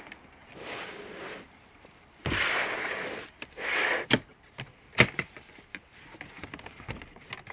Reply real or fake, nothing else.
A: real